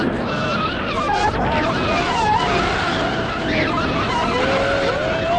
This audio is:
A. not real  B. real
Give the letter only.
B